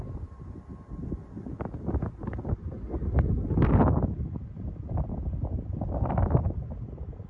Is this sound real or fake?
real